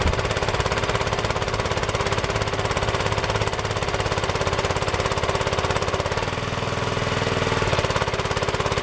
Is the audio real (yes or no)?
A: yes